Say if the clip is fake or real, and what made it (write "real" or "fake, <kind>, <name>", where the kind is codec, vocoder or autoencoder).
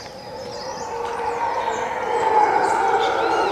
fake, vocoder, BigVGAN v2